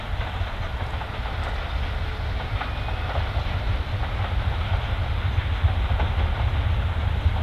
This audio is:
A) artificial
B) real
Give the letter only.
B